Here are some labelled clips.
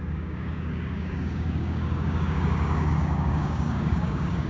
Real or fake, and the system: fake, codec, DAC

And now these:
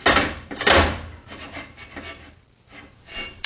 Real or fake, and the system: real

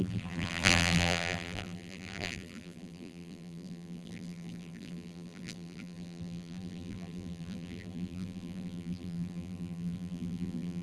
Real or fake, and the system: fake, vocoder, BigVGAN v2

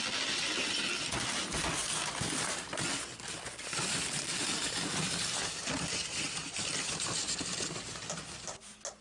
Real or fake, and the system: real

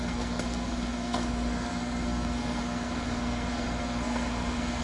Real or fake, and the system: fake, codec, SNAC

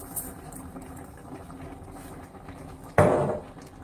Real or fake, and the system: fake, vocoder, BigVGAN v2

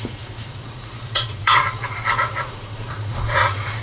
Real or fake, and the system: fake, vocoder, Vocos